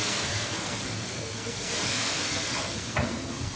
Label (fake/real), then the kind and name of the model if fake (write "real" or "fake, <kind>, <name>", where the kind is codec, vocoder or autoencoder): fake, codec, SNAC